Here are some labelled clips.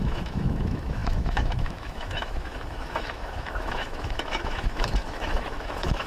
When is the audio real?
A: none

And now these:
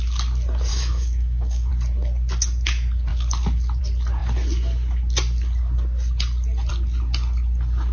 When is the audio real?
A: 0.0-0.7; 1.7-7.9

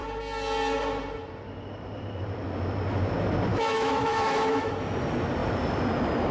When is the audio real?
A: 0.0-3.5; 4.7-6.3

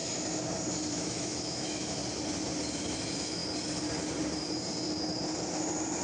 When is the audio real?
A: 0.0-0.9; 2.0-3.0; 3.4-6.0

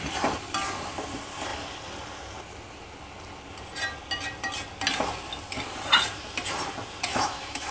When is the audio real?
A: 0.0-7.1

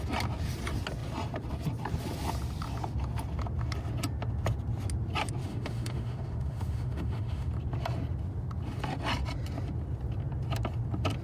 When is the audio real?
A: 0.0-5.4; 7.5-11.2

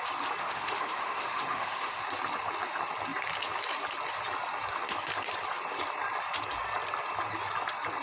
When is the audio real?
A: 0.0-0.4; 2.0-8.0

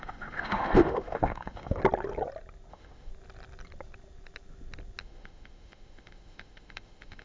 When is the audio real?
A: 1.8-2.7; 3.1-5.0